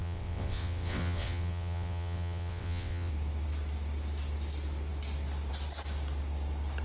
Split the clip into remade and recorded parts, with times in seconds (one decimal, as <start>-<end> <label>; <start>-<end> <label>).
0.0-3.1 remade; 3.1-6.8 recorded